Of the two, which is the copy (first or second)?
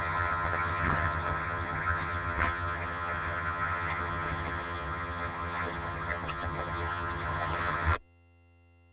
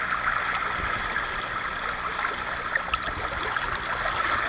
first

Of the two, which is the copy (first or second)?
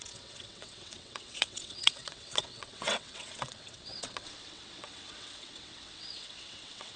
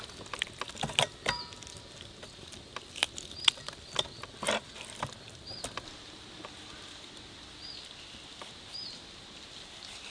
first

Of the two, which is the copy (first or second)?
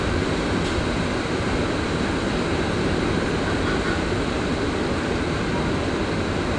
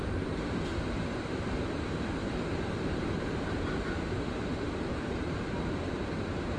second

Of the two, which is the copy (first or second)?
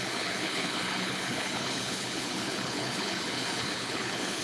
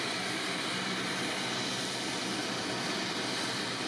first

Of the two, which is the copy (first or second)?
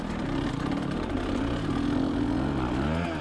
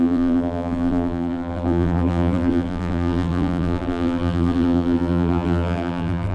second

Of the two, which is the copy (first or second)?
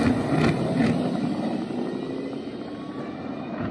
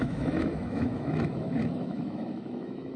second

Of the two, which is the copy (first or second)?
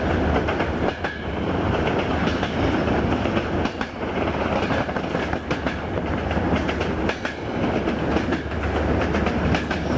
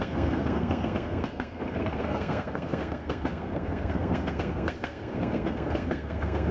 second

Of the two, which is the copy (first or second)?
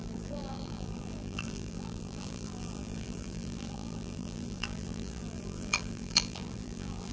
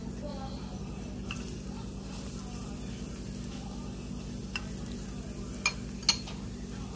first